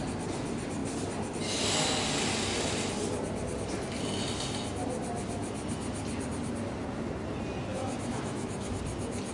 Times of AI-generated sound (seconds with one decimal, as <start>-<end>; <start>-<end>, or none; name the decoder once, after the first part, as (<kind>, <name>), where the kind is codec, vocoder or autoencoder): 7.7-8.8 (autoencoder, DAC-VAE)